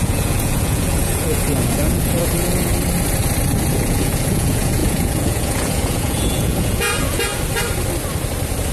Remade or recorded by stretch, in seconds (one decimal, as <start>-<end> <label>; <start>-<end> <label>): 0.0-2.7 remade; 2.7-3.7 recorded; 3.7-7.3 remade; 7.3-8.7 recorded